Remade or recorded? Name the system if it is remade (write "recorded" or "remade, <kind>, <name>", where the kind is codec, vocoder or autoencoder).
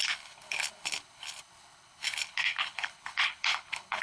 remade, codec, HILCodec